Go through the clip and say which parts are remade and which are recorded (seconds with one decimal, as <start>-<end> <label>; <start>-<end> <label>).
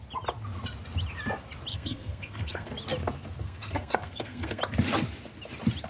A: 0.0-1.7 recorded; 1.7-2.7 remade; 2.7-3.4 recorded; 3.4-4.6 remade; 4.6-5.9 recorded